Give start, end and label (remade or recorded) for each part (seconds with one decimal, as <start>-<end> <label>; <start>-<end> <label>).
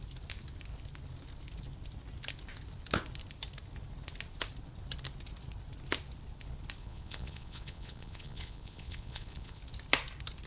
0.0-6.8 recorded; 6.8-9.6 remade; 9.6-10.5 recorded